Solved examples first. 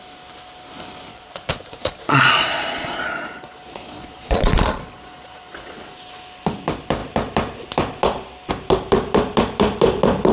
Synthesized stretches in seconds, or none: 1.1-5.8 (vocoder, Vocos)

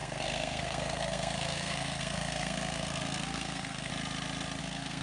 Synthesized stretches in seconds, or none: 0.0-3.9 (codec, SNAC); 4.6-5.0